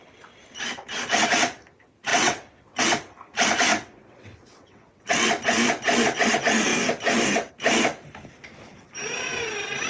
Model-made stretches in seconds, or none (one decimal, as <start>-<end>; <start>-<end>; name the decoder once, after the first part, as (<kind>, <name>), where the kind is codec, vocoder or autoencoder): 2.1-2.8 (vocoder, WaveNeXt); 3.7-5.1